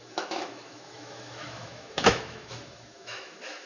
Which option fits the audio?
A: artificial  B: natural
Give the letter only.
A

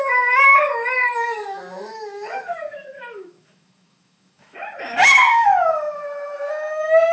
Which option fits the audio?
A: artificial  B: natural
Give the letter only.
A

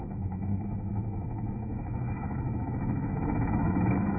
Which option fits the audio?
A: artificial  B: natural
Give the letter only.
A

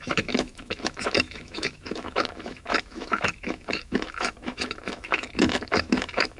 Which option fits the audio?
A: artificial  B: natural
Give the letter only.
A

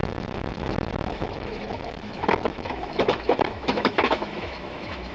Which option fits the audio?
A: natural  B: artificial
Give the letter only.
B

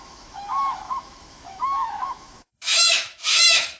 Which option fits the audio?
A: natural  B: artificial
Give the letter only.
B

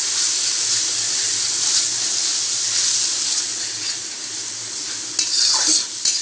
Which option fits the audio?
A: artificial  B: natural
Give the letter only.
B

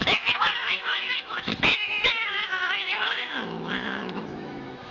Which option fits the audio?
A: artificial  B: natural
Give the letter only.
A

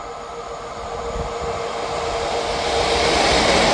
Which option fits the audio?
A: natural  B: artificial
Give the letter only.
A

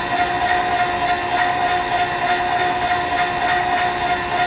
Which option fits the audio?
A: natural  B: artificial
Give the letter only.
A